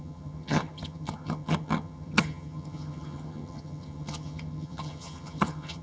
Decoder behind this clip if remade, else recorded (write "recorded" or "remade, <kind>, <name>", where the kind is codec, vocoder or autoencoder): remade, vocoder, HiFi-GAN